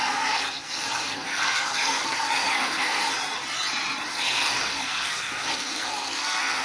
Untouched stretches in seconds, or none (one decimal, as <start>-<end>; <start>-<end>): 3.1-4.1